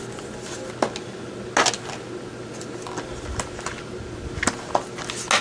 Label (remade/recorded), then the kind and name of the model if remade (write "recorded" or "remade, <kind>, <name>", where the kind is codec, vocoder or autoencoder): recorded